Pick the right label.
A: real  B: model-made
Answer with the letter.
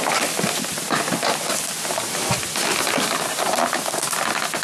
A